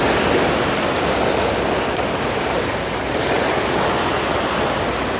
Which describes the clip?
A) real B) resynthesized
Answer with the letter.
A